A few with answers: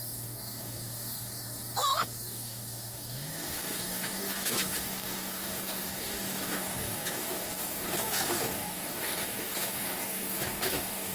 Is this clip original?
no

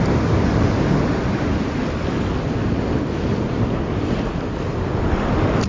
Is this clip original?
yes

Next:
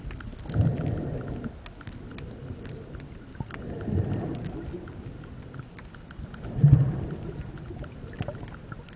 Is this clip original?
yes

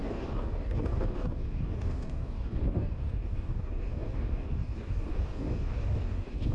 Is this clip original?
no